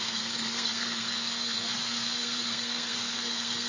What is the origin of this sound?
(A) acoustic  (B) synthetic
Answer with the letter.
B